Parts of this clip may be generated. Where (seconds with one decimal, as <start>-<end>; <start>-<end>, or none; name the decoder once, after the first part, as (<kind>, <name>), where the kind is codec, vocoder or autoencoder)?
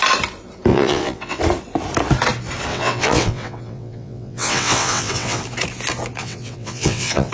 0.7-1.4 (vocoder, WaveNeXt); 2.7-5.4; 6.2-7.3